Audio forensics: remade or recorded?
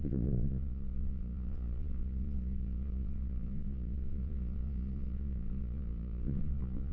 remade